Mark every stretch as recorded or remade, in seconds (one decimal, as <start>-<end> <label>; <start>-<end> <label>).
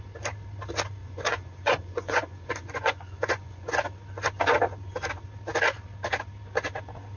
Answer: 0.0-1.0 recorded; 1.0-3.7 remade; 3.7-7.2 recorded